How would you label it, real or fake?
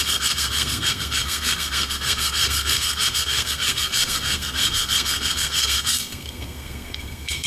fake